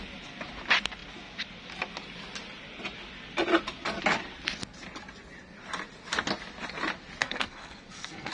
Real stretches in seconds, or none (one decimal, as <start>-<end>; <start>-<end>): 0.0-7.2